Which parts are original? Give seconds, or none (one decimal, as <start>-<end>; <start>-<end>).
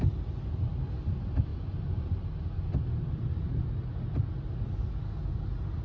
0.0-5.8